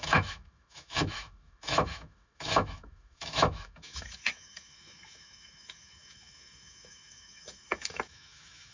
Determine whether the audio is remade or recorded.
remade